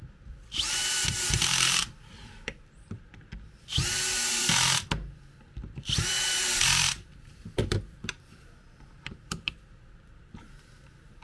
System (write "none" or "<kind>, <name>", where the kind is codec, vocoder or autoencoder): vocoder, BigVGAN v2